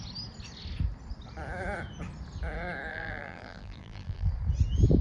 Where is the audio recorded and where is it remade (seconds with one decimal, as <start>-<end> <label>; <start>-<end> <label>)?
0.0-2.9 recorded; 2.9-4.3 remade; 4.3-5.0 recorded